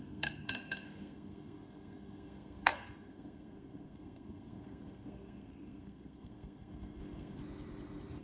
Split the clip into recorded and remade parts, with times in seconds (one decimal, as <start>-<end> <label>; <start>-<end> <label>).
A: 0.0-7.4 remade; 7.4-8.2 recorded